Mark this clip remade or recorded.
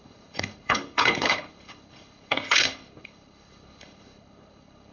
remade